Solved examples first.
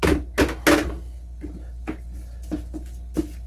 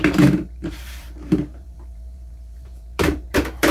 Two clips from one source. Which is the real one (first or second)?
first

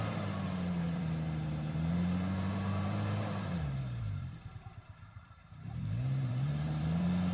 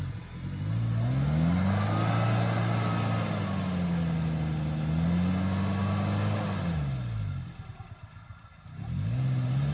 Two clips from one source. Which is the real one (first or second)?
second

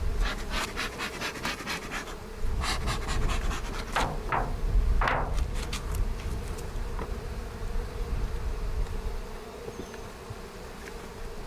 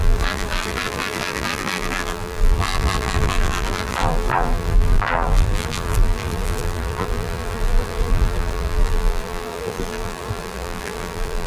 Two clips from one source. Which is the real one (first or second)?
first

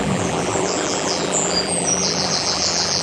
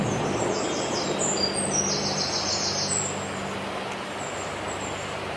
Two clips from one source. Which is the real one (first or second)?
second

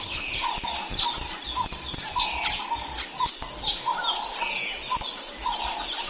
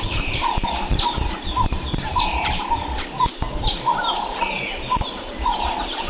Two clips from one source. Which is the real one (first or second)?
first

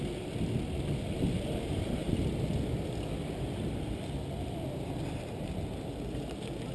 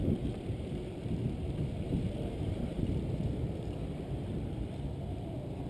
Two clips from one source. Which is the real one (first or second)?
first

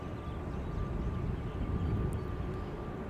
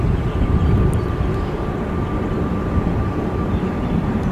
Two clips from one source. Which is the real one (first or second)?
first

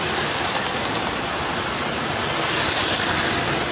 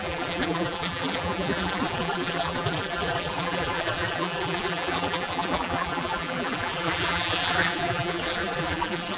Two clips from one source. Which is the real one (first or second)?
first